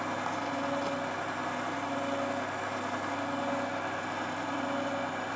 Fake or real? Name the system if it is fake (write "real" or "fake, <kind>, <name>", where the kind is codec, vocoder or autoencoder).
real